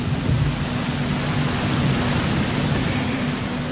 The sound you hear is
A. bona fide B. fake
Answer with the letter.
A